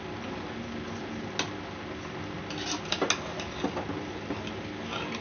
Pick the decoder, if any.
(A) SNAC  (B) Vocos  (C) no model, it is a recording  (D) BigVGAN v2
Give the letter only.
C